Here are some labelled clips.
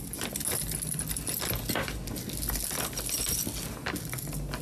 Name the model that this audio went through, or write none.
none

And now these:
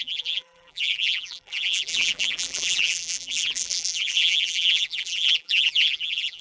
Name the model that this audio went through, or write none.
vocoder, BigVGAN v2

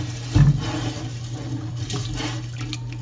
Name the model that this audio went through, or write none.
none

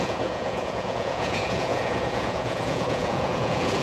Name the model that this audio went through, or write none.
vocoder, Vocos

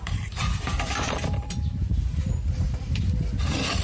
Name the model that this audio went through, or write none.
vocoder, BigVGAN v2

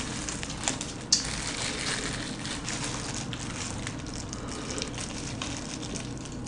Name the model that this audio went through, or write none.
none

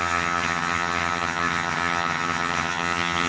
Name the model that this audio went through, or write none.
vocoder, HiFi-GAN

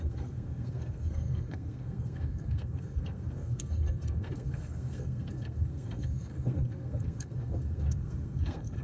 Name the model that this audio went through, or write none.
codec, SNAC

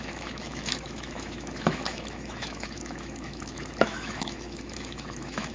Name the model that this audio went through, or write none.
autoencoder, DAC-VAE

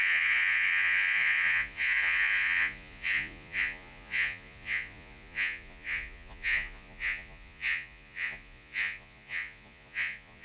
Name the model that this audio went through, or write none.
vocoder, Vocos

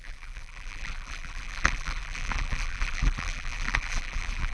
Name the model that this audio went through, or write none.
vocoder, BigVGAN v2